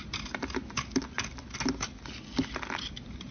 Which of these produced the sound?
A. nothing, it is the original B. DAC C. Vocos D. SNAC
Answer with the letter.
A